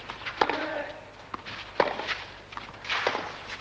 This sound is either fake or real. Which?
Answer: real